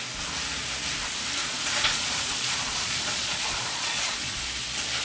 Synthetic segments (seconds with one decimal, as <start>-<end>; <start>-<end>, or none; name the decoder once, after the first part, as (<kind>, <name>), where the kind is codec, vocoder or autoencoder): 1.4-4.4 (vocoder, Vocos)